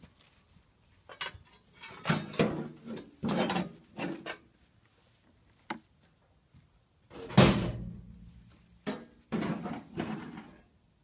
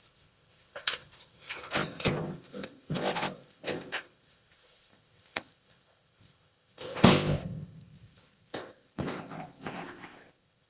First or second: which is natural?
first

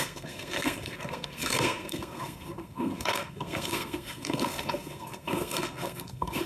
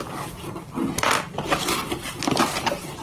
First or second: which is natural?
second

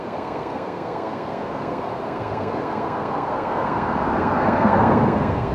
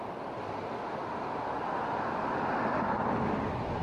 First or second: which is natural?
second